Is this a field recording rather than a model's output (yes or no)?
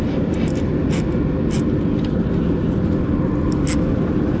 yes